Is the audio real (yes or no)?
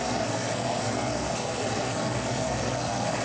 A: no